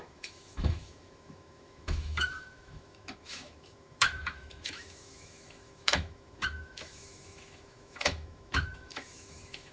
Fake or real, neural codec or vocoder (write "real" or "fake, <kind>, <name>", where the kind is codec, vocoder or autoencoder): fake, autoencoder, DAC-VAE